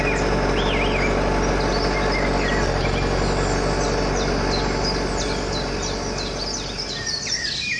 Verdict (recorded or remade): recorded